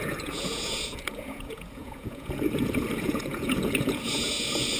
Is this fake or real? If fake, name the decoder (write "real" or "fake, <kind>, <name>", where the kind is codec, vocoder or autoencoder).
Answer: fake, vocoder, Vocos